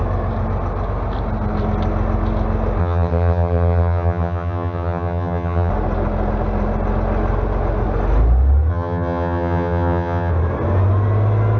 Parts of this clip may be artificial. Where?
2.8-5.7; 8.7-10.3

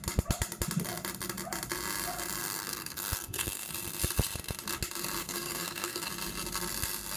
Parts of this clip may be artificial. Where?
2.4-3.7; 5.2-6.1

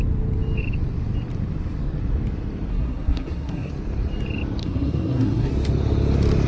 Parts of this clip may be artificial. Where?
2.7-3.7; 4.6-5.5

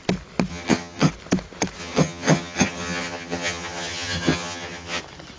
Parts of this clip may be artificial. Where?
0.5-1.1; 1.8-5.0